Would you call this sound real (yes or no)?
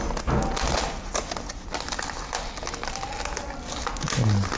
yes